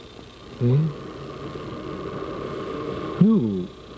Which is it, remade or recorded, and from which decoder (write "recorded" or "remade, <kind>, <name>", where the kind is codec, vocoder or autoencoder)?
recorded